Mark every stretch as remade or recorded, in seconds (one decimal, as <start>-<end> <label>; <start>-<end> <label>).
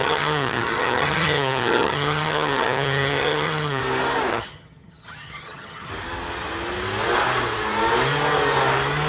0.0-3.8 remade; 3.8-4.3 recorded; 4.3-5.9 remade; 5.9-9.1 recorded